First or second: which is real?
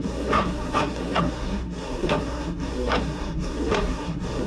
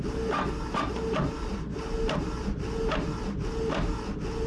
second